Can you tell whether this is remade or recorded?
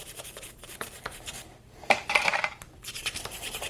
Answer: remade